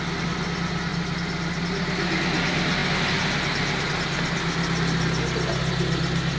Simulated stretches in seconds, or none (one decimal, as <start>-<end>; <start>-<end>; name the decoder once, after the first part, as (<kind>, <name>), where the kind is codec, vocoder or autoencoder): none